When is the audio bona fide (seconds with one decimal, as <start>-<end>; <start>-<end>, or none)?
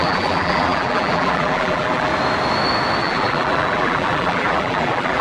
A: 2.1-3.0